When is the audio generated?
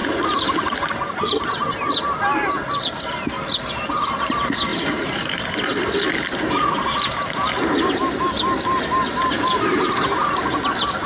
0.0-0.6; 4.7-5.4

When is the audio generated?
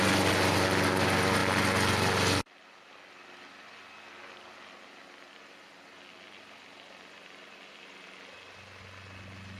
none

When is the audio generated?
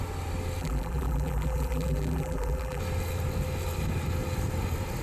0.6-2.8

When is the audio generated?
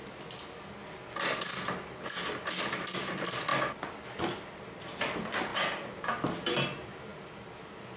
2.6-3.5; 4.8-5.5; 6.3-7.1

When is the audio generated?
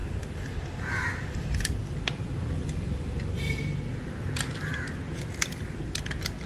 1.2-6.5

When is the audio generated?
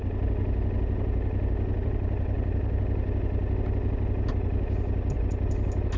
1.8-2.8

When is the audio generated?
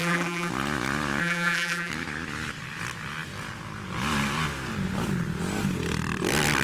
0.0-0.5; 1.2-1.9